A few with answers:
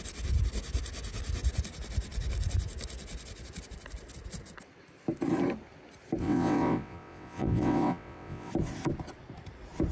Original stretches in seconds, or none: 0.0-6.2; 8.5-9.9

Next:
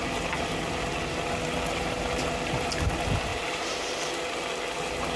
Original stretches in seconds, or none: 0.0-3.3; 4.1-5.2

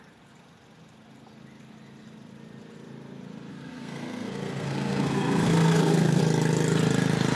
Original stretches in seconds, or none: 0.0-3.5; 6.2-7.4